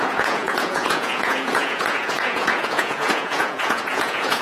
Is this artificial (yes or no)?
yes